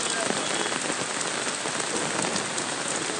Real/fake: real